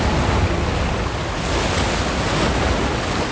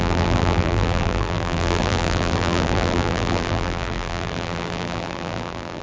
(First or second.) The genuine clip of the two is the first